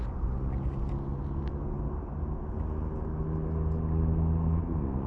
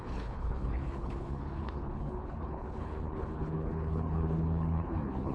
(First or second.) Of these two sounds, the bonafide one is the first